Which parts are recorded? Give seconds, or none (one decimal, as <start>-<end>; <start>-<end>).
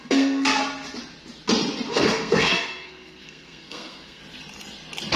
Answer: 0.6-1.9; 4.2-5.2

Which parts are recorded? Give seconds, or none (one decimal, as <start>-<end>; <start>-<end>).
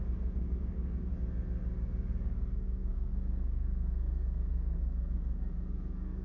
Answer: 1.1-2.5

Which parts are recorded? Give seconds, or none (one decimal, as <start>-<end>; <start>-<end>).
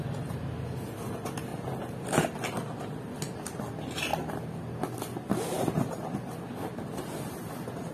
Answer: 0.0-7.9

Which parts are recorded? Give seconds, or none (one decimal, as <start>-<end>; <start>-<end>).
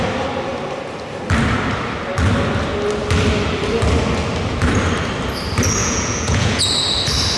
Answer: 0.0-5.8; 6.7-7.4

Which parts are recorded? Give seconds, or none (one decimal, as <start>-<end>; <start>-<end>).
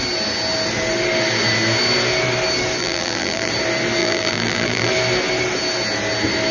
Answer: 0.0-2.8; 3.5-4.0; 4.9-6.5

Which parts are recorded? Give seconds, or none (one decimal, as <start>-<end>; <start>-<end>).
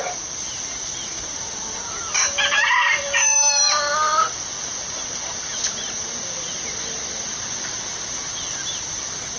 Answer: 0.0-9.4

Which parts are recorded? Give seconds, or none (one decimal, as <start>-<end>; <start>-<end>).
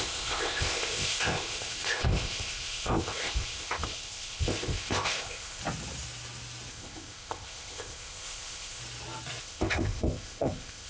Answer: 5.6-6.7; 8.8-9.4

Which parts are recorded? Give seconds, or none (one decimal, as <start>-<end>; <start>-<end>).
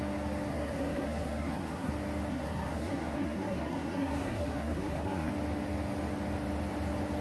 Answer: 0.0-0.5; 1.9-2.3; 5.3-7.2